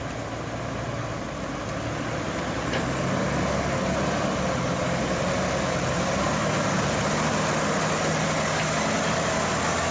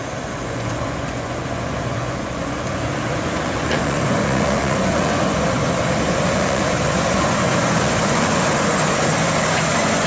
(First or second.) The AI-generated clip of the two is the second